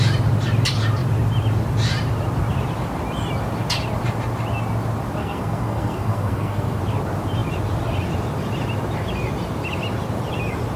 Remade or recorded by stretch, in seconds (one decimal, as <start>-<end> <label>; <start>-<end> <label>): 0.0-5.2 recorded; 5.2-6.8 remade; 6.8-10.8 recorded